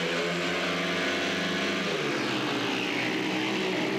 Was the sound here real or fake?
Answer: real